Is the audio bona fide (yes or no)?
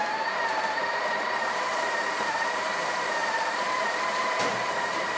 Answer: no